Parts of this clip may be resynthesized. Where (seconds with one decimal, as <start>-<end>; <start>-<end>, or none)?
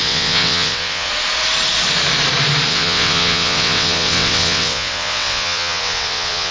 0.0-1.1; 2.7-6.5